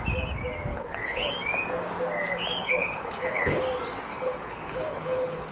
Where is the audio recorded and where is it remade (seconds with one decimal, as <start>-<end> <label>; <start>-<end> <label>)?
0.0-0.7 recorded; 0.7-1.3 remade; 1.3-2.6 recorded; 2.6-3.6 remade; 3.6-4.1 recorded; 4.1-5.5 remade